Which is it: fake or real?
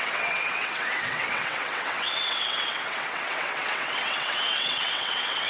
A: fake